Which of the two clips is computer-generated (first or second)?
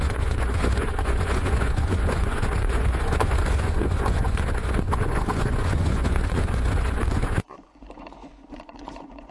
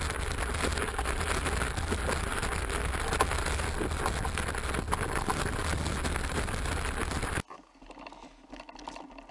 first